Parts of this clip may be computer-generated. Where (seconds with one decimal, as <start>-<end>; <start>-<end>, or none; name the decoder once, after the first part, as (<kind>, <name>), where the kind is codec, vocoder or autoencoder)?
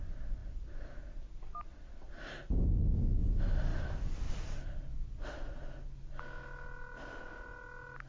none